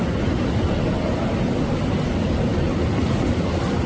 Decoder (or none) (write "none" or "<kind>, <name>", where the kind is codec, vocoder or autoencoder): none